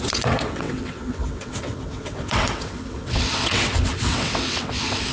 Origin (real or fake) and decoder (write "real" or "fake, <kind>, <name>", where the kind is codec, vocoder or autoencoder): fake, vocoder, WaveNeXt